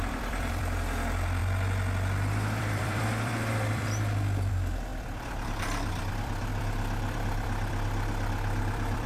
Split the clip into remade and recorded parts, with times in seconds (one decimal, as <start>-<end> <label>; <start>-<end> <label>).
0.0-9.1 remade